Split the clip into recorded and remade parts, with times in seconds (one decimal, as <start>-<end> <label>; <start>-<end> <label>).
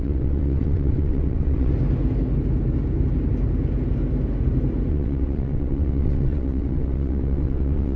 0.0-1.7 remade; 1.7-4.9 recorded; 4.9-8.0 remade